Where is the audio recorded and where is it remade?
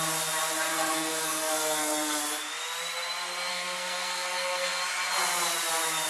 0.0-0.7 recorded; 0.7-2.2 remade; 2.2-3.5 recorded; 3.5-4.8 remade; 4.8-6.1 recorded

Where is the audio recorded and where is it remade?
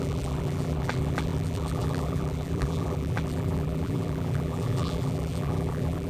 0.0-6.1 remade